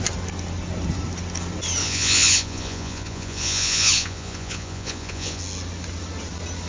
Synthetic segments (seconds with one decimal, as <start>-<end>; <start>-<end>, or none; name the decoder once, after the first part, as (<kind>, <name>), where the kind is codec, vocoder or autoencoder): 1.8-5.4 (vocoder, Vocos)